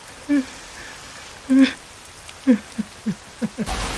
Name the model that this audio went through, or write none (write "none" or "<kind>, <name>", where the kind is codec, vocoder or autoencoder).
none